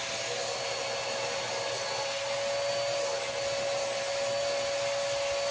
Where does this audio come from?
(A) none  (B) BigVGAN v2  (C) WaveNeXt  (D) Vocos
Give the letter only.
A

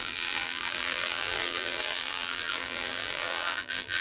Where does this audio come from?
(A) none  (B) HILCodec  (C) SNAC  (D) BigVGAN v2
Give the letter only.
D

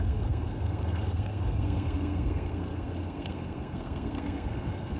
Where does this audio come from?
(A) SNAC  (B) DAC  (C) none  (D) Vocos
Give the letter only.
A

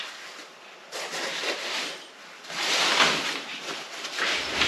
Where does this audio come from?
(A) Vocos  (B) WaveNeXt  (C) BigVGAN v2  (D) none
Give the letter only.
D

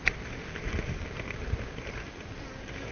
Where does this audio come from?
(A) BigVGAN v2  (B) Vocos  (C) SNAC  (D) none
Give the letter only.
D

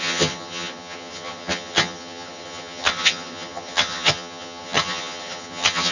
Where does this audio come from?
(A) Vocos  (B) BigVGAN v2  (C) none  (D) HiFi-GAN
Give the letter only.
D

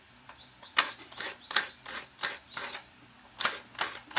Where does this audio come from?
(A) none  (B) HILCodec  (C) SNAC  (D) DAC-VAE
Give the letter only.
A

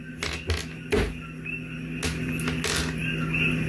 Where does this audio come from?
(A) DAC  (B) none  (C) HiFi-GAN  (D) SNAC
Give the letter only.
B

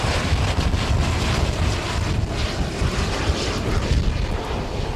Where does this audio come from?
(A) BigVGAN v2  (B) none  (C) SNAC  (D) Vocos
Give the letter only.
B